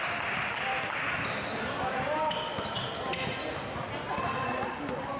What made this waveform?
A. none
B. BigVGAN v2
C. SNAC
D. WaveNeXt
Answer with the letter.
A